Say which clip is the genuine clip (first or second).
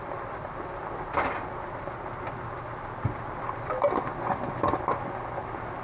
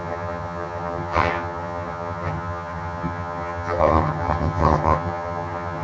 first